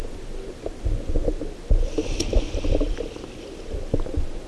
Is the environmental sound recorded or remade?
recorded